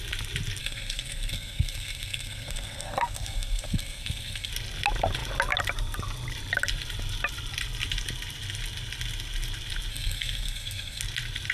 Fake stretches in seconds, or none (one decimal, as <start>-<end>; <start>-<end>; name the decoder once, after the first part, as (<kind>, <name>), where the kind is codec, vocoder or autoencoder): 0.6-4.5 (codec, SNAC); 9.9-11.0